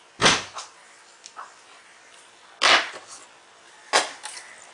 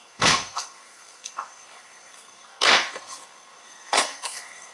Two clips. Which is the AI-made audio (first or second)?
second